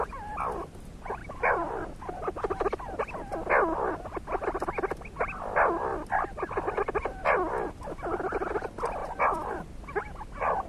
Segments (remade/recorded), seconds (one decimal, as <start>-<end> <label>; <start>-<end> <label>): 0.0-1.2 recorded; 1.2-1.7 remade; 1.7-9.0 recorded; 9.0-9.5 remade; 9.5-10.7 recorded